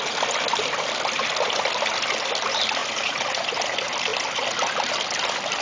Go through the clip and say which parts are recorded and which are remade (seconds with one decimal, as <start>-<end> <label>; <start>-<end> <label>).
0.0-2.8 recorded; 2.8-3.5 remade; 3.5-5.6 recorded